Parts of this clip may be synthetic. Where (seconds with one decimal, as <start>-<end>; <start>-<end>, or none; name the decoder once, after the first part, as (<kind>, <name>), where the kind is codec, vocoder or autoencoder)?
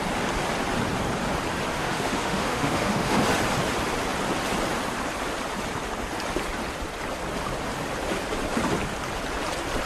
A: 1.7-3.2 (autoencoder, DAC-VAE)